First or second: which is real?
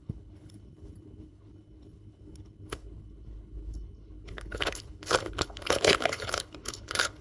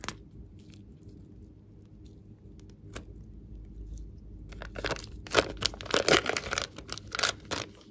second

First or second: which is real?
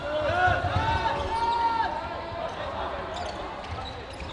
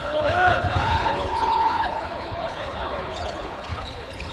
first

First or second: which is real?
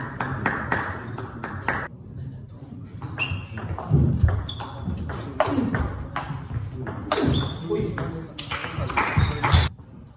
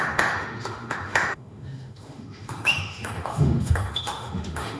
first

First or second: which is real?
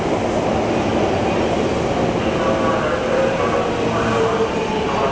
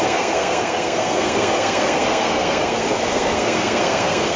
first